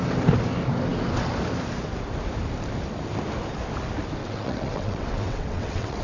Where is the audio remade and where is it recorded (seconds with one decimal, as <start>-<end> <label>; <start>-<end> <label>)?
0.0-4.2 recorded; 4.2-6.0 remade

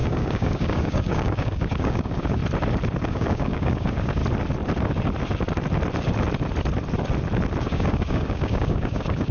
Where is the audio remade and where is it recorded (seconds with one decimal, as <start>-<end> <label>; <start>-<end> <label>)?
0.0-2.4 remade; 2.4-3.0 recorded; 3.0-4.2 remade; 4.2-7.6 recorded; 7.6-9.3 remade

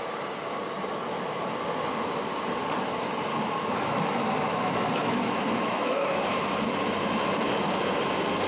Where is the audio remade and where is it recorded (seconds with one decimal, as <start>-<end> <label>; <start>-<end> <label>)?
0.0-3.3 recorded; 3.3-6.5 remade; 6.5-8.5 recorded

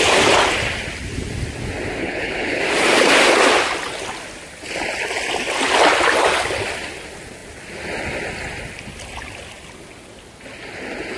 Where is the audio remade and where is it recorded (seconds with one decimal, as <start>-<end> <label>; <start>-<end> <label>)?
0.0-2.0 recorded; 2.0-2.6 remade; 2.6-11.2 recorded

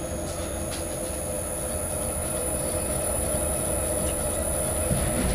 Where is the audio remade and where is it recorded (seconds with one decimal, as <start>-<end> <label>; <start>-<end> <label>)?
0.0-2.2 recorded; 2.2-3.3 remade; 3.3-5.3 recorded

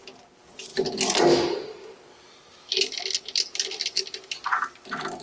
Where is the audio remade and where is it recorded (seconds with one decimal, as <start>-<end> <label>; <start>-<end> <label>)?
0.0-5.2 recorded